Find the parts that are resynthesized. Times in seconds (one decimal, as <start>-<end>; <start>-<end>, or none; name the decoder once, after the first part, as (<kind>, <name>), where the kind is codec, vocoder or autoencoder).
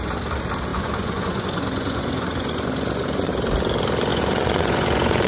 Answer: 0.7-3.3 (vocoder, Vocos); 4.1-5.3